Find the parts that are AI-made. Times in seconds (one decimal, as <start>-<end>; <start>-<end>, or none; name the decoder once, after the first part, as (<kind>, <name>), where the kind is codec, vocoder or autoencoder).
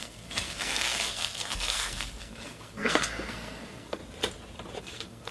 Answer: 0.0-4.0 (codec, SNAC); 4.8-5.3